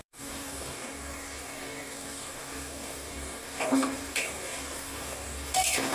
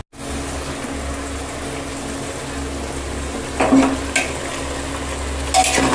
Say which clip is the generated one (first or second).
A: first